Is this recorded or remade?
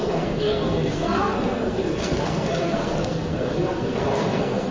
remade